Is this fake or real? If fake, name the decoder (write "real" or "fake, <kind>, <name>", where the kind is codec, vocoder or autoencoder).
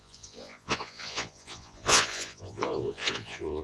fake, vocoder, Vocos